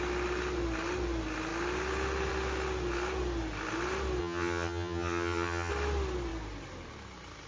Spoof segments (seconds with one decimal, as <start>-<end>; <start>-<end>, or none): 4.2-5.7